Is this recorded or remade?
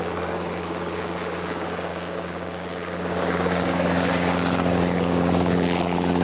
remade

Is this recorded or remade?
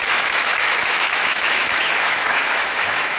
remade